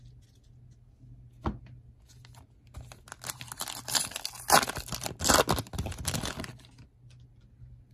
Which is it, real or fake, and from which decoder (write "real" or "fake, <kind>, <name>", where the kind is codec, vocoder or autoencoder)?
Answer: real